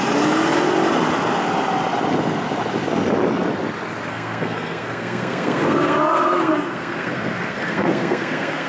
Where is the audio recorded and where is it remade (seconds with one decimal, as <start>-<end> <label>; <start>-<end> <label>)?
0.0-4.1 recorded; 4.1-8.7 remade